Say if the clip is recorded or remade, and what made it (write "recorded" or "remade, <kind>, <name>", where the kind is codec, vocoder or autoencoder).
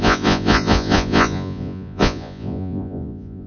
remade, vocoder, Vocos